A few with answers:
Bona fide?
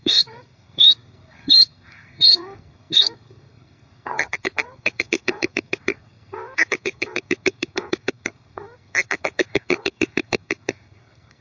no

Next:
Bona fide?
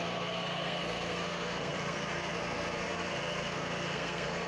no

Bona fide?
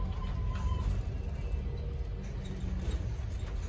yes